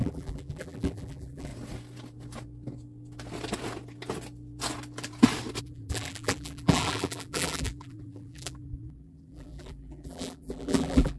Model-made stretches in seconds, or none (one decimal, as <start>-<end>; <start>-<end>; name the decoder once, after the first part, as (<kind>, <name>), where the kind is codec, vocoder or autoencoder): 0.0-1.5 (vocoder, BigVGAN v2); 5.6-11.2